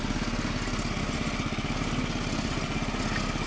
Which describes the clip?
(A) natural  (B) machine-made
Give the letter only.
A